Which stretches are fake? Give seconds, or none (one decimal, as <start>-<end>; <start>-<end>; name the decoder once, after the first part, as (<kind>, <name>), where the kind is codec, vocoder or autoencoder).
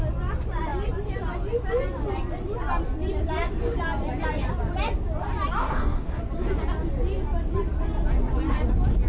5.6-6.2 (codec, DAC)